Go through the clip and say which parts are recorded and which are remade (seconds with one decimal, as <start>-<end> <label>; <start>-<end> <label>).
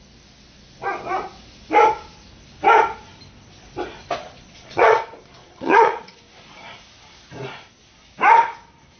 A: 0.0-4.2 recorded; 4.2-5.0 remade; 5.0-5.4 recorded; 5.4-6.2 remade; 6.2-9.0 recorded